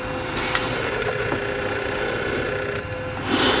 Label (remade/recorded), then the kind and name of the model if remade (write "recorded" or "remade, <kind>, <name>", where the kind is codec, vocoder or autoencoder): recorded